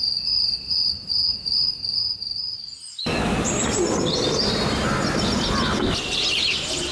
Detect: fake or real real